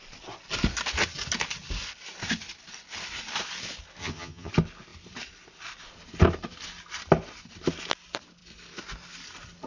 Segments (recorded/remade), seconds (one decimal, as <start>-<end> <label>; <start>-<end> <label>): 0.0-4.0 recorded; 4.0-4.5 remade; 4.5-9.7 recorded